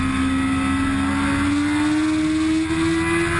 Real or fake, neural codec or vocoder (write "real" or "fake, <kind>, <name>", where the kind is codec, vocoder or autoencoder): real